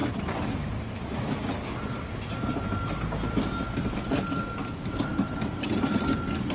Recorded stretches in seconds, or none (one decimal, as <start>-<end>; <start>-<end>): 0.0-6.5